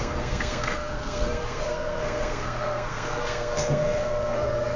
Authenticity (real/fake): fake